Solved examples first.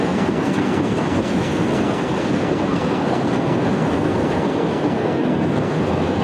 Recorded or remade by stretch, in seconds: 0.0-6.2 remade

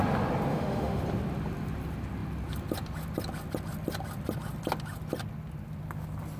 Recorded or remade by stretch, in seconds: 0.0-0.5 recorded; 0.5-1.0 remade; 1.0-6.4 recorded

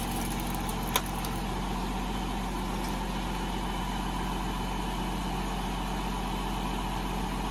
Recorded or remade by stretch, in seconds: 0.0-7.5 recorded

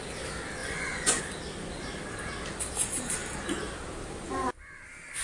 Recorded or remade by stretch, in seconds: 0.0-0.6 recorded; 0.6-1.2 remade; 1.2-5.2 recorded

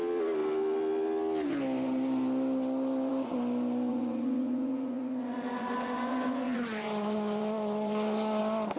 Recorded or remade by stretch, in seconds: 0.0-3.9 recorded; 3.9-8.4 remade; 8.4-8.8 recorded